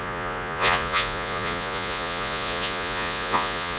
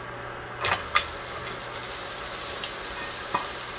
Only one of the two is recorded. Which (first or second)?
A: second